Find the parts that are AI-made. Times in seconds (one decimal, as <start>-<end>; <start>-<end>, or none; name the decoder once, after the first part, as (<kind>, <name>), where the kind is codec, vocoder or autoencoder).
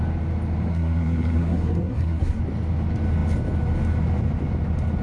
0.7-2.4 (codec, SNAC)